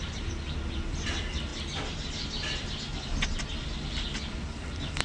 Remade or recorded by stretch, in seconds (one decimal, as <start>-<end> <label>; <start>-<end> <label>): 0.0-1.5 remade; 1.5-4.5 recorded; 4.5-5.0 remade